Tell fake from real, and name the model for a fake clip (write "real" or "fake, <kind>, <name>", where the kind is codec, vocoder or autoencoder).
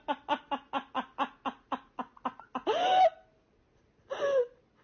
real